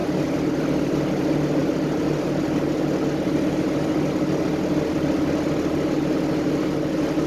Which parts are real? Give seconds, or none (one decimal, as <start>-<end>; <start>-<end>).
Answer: 0.0-7.3